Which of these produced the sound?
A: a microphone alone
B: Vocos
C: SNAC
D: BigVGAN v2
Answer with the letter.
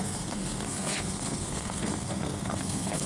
C